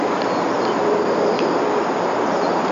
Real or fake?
real